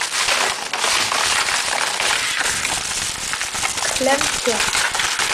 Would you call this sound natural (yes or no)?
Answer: yes